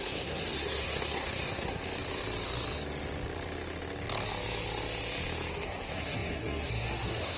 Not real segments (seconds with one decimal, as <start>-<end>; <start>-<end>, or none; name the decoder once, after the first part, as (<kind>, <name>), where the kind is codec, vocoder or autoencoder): 0.0-1.8 (codec, SNAC); 5.5-7.4